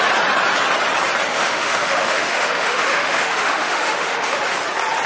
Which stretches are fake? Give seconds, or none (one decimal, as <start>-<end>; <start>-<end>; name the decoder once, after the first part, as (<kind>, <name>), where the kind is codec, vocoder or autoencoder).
1.3-4.4 (autoencoder, DAC-VAE)